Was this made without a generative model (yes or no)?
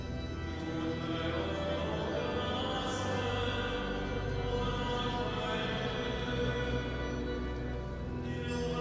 yes